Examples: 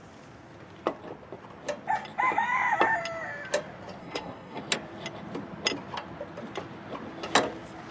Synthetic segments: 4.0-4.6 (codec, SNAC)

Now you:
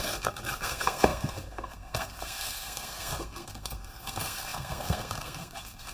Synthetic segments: 0.0-5.9 (codec, SNAC)